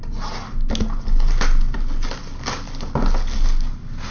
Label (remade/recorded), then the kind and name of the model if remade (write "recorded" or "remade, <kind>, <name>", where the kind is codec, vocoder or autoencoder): recorded